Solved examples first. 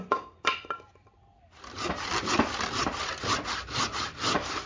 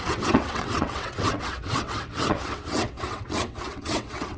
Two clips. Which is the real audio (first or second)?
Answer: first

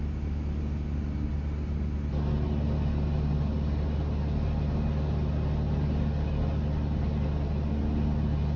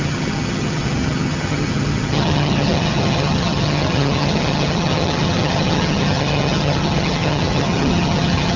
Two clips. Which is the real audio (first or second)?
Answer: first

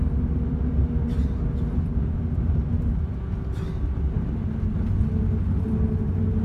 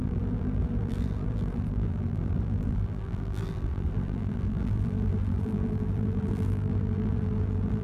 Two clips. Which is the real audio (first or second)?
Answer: first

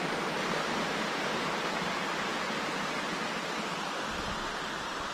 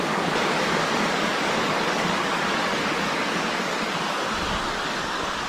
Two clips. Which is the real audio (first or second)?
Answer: first